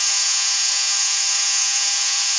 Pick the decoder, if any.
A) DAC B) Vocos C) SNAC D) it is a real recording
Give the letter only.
B